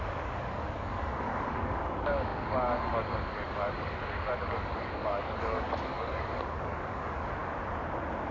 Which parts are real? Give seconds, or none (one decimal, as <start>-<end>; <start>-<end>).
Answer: 7.4-8.3